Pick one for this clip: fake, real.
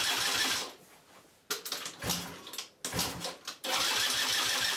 real